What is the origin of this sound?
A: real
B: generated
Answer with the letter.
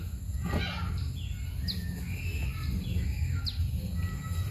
A